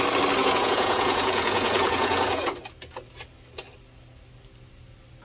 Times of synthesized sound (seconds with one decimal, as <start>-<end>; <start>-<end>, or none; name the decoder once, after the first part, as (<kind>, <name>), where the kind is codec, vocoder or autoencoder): 0.4-2.5 (vocoder, Vocos)